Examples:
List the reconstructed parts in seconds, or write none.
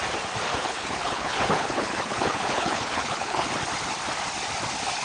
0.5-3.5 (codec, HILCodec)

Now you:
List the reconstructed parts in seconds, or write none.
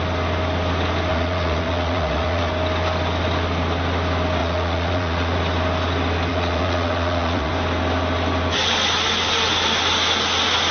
1.1-2.5 (vocoder, Vocos); 4.4-5.4; 6.3-7.5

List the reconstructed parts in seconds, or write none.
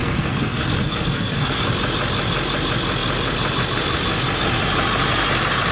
0.0-1.7 (codec, SNAC)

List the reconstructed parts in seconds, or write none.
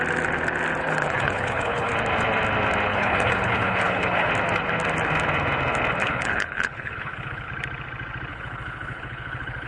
0.8-1.9 (codec, HILCodec); 2.9-4.3; 6.0-7.5; 8.3-9.7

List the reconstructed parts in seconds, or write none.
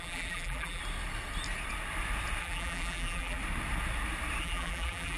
0.0-0.8 (vocoder, BigVGAN v2); 2.4-3.4; 4.4-5.2